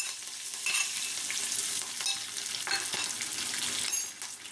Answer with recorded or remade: recorded